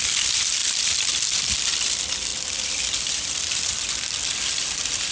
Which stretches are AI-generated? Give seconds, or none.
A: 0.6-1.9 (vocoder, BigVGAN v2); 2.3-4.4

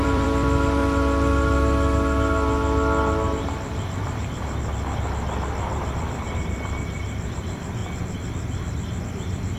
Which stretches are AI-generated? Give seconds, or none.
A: 0.0-0.8 (vocoder, BigVGAN v2); 5.9-7.8; 9.1-9.6

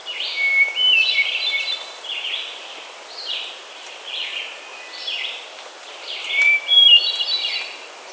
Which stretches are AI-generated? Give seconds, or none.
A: 0.0-3.3 (vocoder, BigVGAN v2); 4.7-7.2